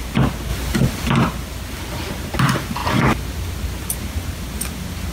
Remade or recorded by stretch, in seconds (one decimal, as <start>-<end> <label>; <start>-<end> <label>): 0.0-5.1 recorded